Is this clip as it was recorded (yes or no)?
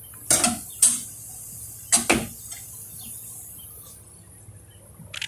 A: yes